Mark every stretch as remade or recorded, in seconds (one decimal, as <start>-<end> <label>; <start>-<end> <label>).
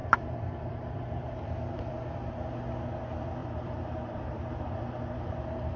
0.0-1.9 remade; 1.9-3.4 recorded; 3.4-5.3 remade; 5.3-5.8 recorded